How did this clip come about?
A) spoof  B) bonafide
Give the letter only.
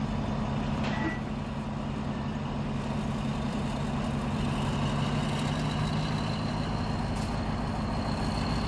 B